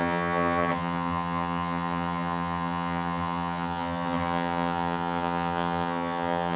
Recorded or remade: remade